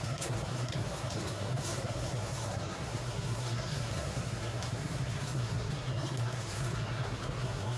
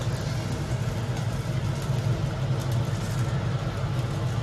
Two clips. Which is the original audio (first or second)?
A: second